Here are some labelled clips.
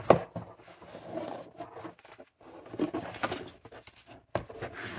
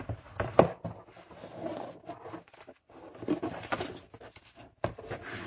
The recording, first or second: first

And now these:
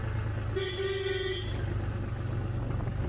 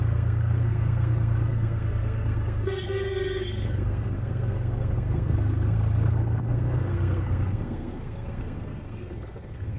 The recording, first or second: first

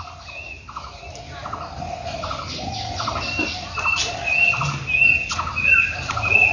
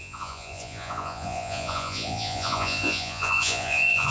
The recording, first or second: first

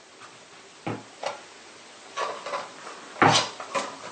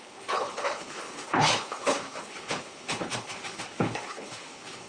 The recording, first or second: first